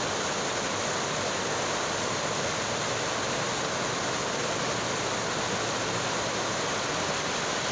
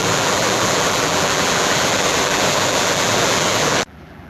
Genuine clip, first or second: first